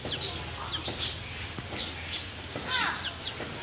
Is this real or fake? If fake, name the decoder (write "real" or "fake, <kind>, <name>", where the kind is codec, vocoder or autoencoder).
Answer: real